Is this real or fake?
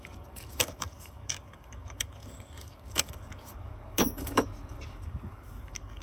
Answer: fake